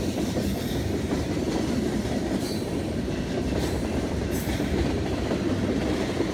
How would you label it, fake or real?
fake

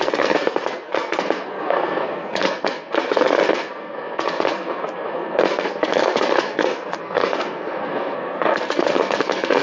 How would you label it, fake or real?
fake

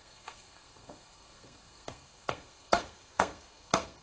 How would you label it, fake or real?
fake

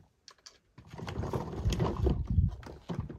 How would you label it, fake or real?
real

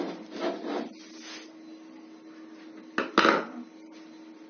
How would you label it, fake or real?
real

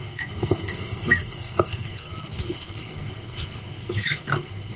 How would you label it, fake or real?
fake